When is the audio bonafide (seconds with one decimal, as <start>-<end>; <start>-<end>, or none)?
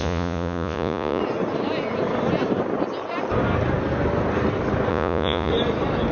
1.2-4.9; 5.5-6.1